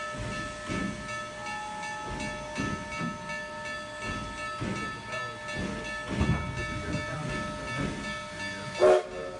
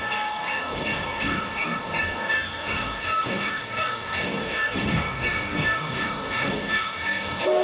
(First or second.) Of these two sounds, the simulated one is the second